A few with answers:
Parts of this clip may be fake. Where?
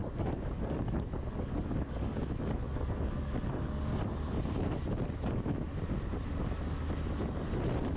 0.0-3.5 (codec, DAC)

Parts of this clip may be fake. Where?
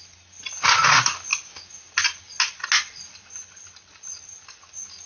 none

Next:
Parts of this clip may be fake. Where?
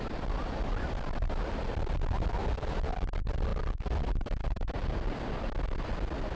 none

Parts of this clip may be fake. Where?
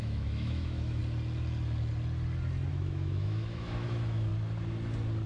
0.0-1.0 (autoencoder, DAC-VAE); 2.7-4.3